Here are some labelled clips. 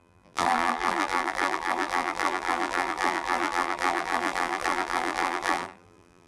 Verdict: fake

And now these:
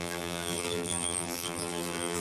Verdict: fake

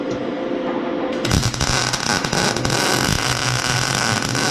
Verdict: real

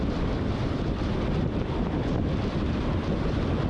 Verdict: fake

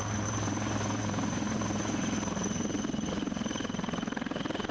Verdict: fake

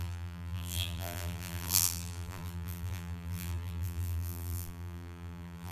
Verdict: fake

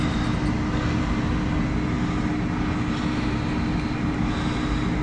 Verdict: real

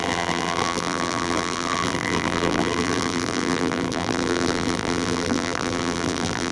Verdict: fake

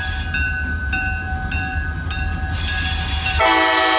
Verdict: real